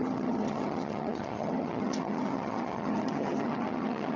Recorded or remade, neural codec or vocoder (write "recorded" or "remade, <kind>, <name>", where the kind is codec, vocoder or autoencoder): remade, vocoder, HiFi-GAN